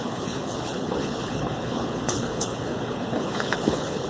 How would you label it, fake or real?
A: fake